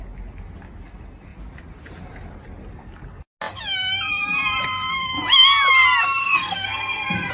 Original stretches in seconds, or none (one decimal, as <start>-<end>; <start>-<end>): 0.0-6.2